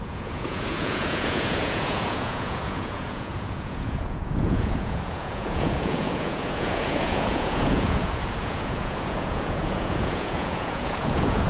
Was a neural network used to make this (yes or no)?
yes